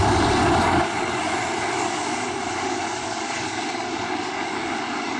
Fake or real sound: fake